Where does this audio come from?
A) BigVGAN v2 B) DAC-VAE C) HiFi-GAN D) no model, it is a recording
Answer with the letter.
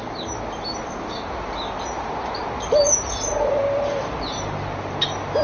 D